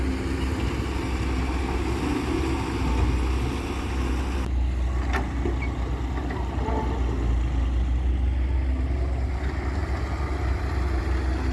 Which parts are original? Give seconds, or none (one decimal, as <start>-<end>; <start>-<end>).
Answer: 0.0-11.5

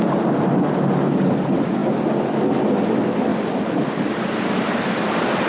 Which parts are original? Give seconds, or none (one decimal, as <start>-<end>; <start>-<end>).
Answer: 0.0-3.3

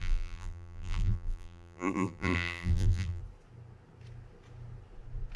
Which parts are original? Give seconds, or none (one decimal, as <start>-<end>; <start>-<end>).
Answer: 3.2-5.4

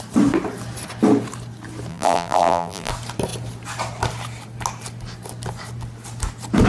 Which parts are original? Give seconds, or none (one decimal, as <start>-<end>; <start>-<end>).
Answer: 0.0-1.9; 2.9-6.7

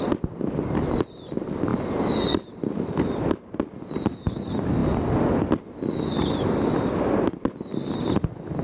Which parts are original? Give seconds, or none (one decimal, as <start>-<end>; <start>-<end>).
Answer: 0.0-8.6